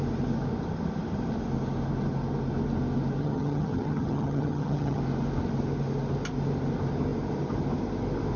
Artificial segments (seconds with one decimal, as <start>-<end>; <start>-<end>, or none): 3.2-5.0